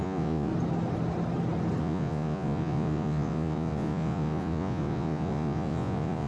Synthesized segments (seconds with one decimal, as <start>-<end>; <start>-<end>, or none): 0.0-0.5; 1.8-6.3